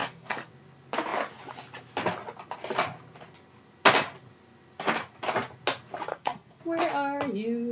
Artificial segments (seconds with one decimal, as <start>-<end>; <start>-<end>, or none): 0.0-0.5; 6.1-6.6